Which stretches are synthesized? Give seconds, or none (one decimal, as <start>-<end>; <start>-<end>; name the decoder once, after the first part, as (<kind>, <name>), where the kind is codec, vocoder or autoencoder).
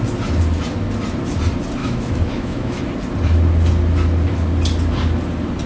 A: 1.8-2.8 (autoencoder, DAC-VAE)